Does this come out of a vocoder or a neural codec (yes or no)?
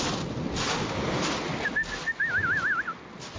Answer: no